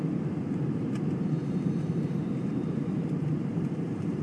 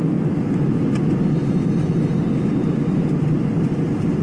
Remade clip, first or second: first